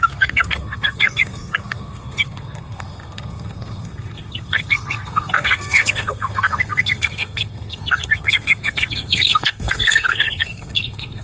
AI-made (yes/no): yes